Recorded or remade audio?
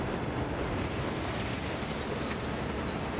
recorded